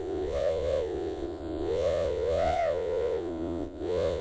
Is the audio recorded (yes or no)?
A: no